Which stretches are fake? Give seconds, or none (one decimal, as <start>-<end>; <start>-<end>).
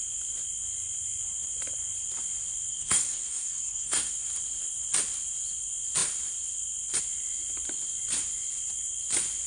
2.7-4.1